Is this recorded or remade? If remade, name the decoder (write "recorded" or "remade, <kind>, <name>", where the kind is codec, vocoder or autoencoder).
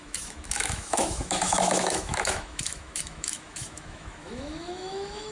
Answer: remade, autoencoder, DAC-VAE